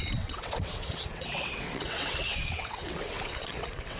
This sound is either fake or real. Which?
fake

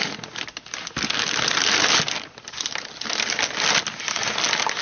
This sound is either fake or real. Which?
real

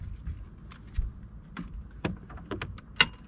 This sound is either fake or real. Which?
real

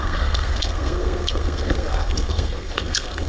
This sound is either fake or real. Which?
fake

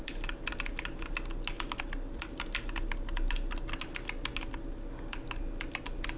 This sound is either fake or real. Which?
real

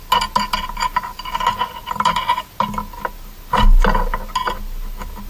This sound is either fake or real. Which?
real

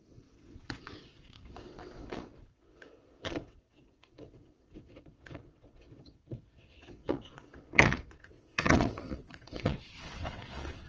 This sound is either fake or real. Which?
fake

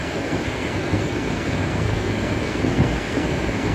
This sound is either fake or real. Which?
fake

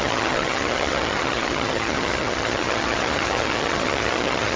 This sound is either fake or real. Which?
fake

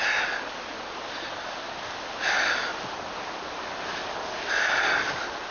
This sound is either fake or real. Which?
real